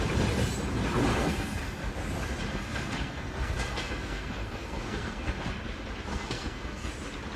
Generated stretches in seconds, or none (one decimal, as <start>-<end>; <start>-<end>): 1.1-1.9; 2.5-5.5; 6.1-6.9